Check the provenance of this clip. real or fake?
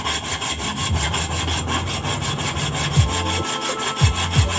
real